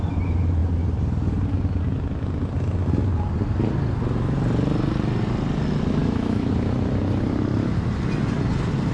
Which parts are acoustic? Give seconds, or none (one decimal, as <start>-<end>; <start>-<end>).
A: 0.0-6.0; 6.5-8.9